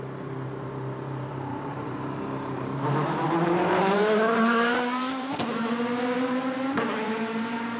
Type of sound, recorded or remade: remade